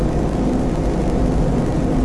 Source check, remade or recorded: recorded